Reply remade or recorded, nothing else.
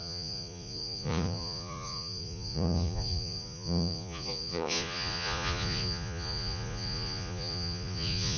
remade